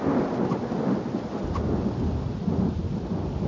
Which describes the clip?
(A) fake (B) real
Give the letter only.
B